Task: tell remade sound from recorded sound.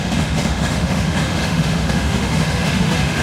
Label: remade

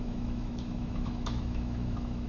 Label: remade